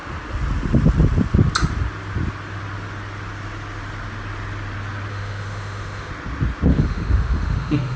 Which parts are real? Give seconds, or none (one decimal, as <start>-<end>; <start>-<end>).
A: 0.0-5.1; 6.1-6.7